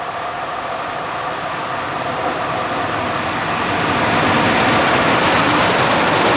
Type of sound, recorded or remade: recorded